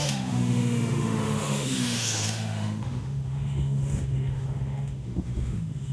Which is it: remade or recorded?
remade